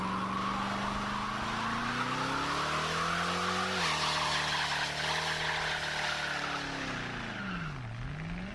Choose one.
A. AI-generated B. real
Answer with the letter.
B